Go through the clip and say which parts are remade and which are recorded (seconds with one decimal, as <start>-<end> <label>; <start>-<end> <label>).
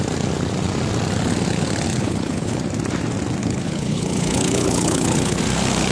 0.0-1.9 recorded; 1.9-2.6 remade; 2.6-3.4 recorded; 3.4-5.4 remade; 5.4-5.9 recorded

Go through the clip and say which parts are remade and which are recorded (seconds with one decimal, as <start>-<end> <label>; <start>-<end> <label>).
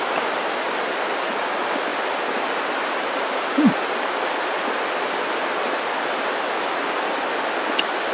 0.0-8.1 recorded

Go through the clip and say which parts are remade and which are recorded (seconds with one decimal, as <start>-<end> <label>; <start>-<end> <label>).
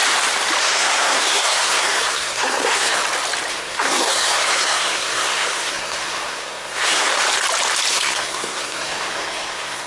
0.0-0.6 recorded; 0.6-3.0 remade; 3.0-3.5 recorded; 3.5-7.1 remade; 7.1-7.9 recorded; 7.9-9.9 remade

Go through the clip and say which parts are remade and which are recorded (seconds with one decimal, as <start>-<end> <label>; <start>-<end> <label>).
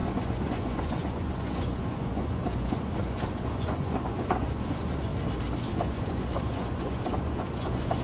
0.0-5.1 remade; 5.1-5.7 recorded; 5.7-8.0 remade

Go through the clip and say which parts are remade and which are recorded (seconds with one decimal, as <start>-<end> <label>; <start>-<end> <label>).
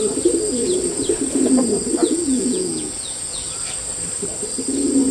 0.0-2.0 recorded; 2.0-3.5 remade; 3.5-5.1 recorded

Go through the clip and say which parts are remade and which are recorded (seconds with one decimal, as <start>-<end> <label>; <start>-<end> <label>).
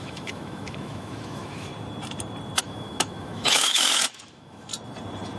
0.0-1.7 remade; 1.7-2.6 recorded; 2.6-4.7 remade; 4.7-5.4 recorded